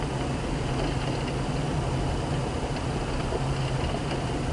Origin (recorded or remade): recorded